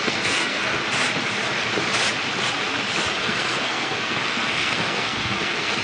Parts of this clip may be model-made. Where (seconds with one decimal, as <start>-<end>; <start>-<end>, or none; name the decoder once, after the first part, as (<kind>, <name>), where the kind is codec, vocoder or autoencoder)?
0.0-0.8 (codec, SNAC); 3.2-5.8